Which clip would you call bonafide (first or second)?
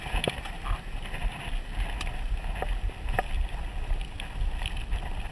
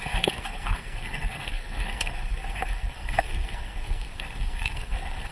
first